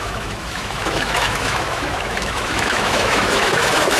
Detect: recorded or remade remade